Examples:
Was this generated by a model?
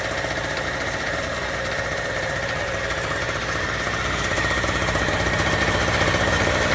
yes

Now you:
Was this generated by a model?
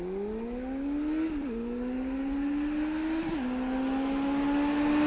no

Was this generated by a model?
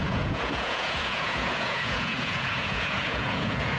yes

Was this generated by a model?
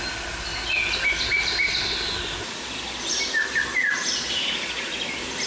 no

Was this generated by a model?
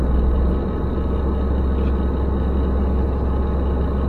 no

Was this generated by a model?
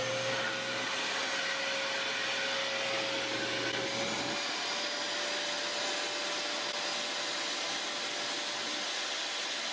no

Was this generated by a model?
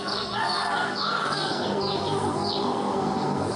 yes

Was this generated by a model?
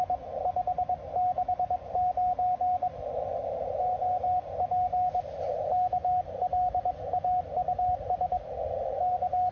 no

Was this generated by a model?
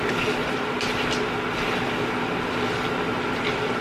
no